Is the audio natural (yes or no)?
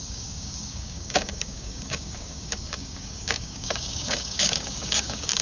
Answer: no